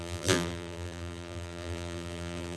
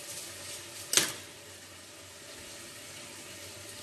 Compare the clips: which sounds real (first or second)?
second